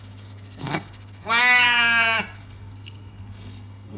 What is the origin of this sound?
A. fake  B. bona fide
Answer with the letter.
A